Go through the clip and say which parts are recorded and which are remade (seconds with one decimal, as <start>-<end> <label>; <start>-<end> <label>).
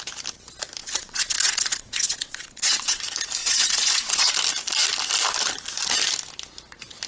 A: 0.0-0.8 recorded; 0.8-3.0 remade; 3.0-3.4 recorded; 3.4-4.3 remade; 4.3-7.1 recorded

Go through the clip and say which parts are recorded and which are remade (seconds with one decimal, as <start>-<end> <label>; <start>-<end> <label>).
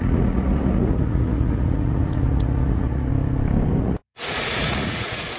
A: 0.0-3.1 remade; 3.1-3.8 recorded; 3.8-5.4 remade